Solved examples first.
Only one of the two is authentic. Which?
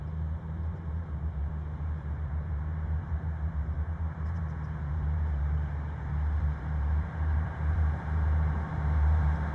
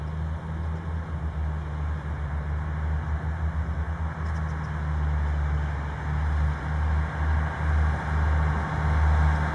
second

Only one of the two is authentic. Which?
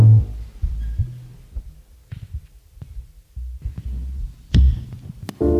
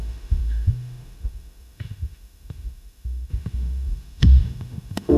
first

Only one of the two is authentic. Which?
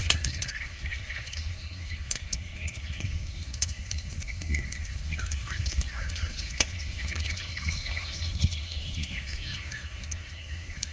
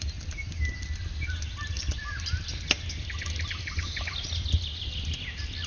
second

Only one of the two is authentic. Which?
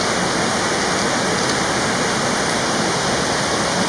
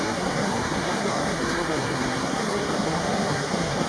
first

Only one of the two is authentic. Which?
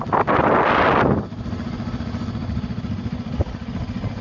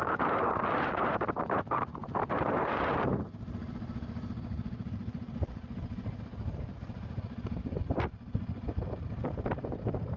first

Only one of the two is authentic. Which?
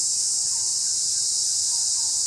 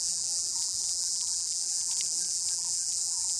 first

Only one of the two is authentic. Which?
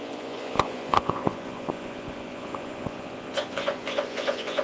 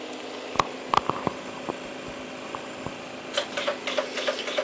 second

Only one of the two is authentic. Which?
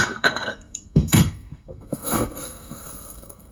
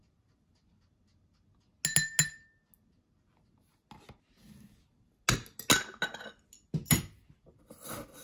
second